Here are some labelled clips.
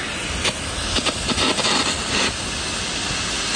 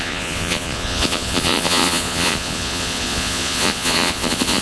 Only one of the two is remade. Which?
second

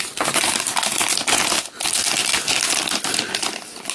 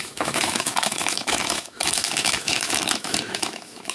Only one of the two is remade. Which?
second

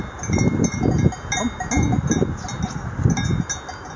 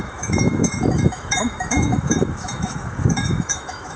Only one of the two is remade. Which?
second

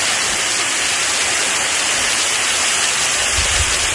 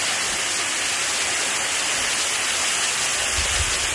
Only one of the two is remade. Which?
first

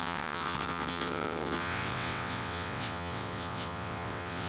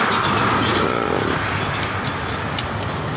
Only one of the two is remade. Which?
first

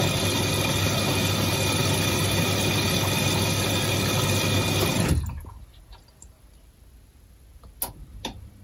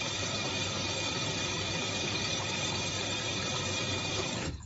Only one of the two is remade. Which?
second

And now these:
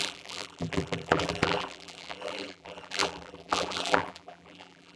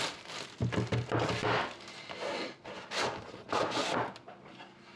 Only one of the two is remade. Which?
first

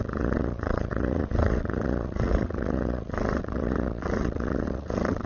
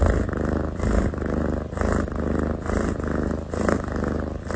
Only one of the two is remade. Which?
first